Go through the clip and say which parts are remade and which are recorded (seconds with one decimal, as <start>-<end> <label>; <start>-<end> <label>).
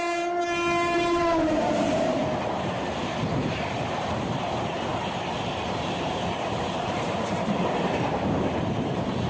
0.0-4.9 remade; 4.9-5.6 recorded; 5.6-9.3 remade